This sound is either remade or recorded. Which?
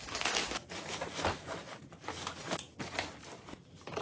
recorded